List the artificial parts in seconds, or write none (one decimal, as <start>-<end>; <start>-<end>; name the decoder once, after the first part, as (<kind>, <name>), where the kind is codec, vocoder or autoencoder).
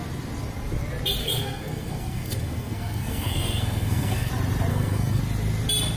1.2-4.3 (codec, SNAC); 4.7-5.2